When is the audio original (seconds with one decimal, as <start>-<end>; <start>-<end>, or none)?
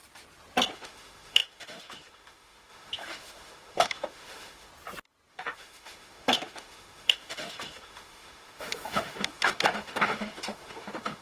0.0-0.7; 4.7-5.3